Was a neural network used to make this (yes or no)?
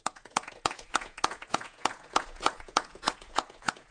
yes